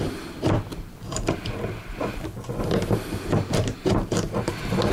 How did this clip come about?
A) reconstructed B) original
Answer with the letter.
B